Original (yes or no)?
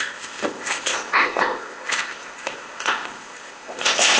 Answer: no